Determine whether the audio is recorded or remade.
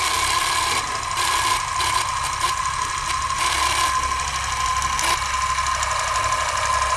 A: recorded